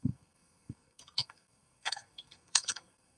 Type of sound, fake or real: fake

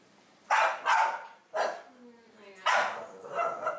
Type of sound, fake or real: real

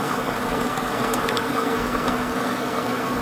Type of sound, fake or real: fake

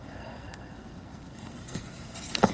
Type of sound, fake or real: fake